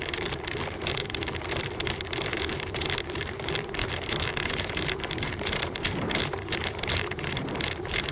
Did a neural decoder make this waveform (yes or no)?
yes